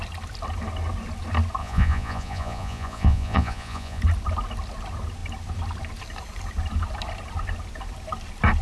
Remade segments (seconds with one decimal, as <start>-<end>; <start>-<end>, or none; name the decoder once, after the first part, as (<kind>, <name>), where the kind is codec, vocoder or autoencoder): 1.6-4.0 (vocoder, Vocos)